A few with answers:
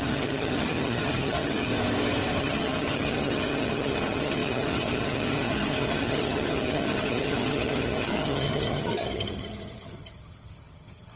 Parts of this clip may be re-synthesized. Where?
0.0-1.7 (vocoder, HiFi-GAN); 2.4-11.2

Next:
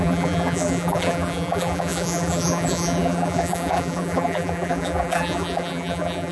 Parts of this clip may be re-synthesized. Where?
0.0-6.3 (vocoder, BigVGAN v2)

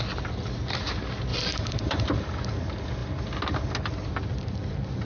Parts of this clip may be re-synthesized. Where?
1.3-2.1 (vocoder, BigVGAN v2)

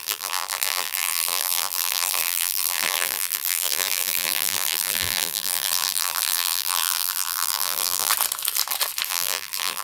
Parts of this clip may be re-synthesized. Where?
0.0-8.1 (vocoder, BigVGAN v2); 9.1-9.8

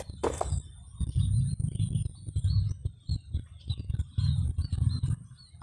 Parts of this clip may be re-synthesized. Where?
none

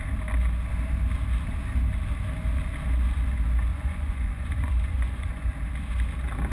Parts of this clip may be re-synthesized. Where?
3.7-5.5 (vocoder, Vocos)

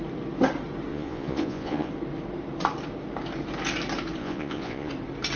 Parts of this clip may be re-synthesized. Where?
0.9-1.9 (vocoder, Vocos); 4.2-4.9

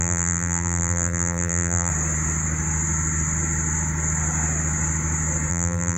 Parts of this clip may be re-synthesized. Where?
0.0-1.9 (vocoder, BigVGAN v2); 5.5-6.0